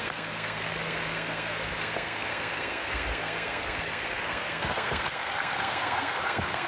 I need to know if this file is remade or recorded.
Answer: remade